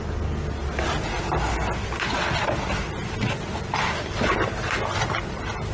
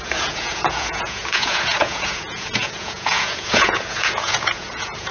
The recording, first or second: first